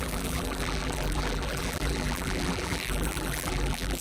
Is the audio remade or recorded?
remade